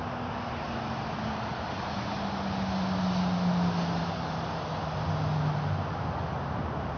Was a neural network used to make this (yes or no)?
no